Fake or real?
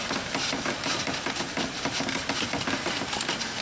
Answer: real